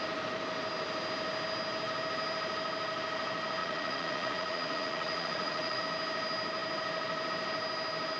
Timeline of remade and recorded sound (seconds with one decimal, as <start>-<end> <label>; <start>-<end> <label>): 0.0-3.6 recorded; 3.6-5.8 remade; 5.8-8.2 recorded